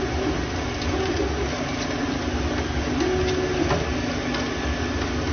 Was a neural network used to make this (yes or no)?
no